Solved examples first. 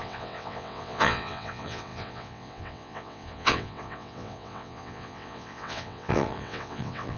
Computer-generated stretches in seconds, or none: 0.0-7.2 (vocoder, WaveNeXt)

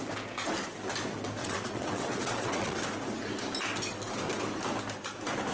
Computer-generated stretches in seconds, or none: 1.4-2.8 (vocoder, WaveNeXt)

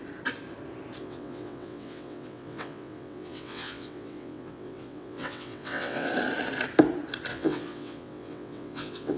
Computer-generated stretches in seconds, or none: 1.0-6.1 (vocoder, WaveNeXt); 7.3-9.2

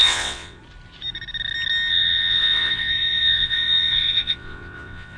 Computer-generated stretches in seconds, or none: 0.0-0.6 (vocoder, WaveNeXt); 1.9-5.2

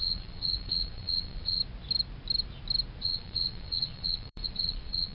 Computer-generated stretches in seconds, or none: 0.0-1.6 (vocoder, WaveNeXt); 3.0-5.1